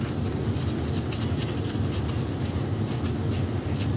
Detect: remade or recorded recorded